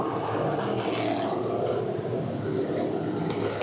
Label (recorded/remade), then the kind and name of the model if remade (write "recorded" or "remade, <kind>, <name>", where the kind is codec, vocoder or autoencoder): recorded